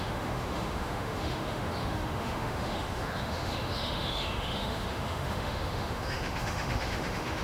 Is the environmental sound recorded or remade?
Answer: remade